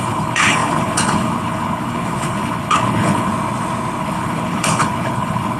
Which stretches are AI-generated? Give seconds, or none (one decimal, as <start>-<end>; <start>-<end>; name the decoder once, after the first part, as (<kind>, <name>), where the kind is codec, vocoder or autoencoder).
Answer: 0.0-3.3 (codec, HILCodec); 4.0-5.6

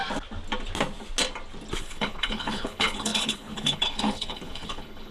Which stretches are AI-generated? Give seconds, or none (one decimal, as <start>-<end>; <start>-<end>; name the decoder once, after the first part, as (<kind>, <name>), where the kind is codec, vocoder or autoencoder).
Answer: 1.8-5.1 (codec, HILCodec)

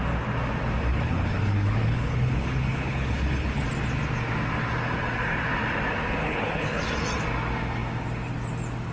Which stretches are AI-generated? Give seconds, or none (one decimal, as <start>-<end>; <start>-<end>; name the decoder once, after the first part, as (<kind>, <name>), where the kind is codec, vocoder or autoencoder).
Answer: 0.9-3.7 (codec, HILCodec); 6.2-6.8

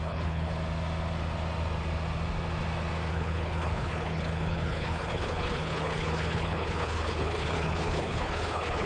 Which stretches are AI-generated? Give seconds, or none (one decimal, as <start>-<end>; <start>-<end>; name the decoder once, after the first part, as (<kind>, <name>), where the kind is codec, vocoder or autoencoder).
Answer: 0.0-0.5 (codec, HILCodec); 3.1-8.9